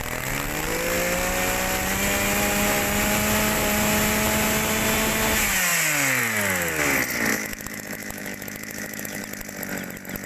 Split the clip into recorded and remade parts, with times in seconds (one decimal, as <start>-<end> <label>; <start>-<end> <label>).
0.0-7.3 recorded; 7.3-9.2 remade; 9.2-10.3 recorded